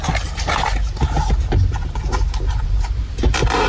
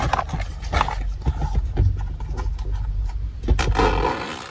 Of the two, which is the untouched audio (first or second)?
second